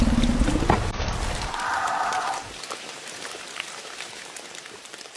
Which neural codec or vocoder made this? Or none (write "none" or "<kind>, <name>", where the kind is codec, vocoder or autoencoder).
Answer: vocoder, BigVGAN v2